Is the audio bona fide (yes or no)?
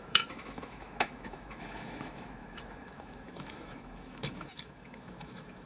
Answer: no